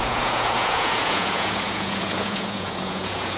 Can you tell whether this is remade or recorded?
remade